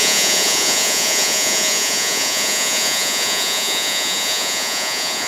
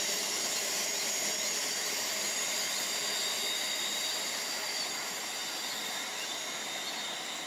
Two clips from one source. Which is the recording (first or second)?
second